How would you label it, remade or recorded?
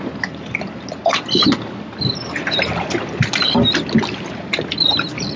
recorded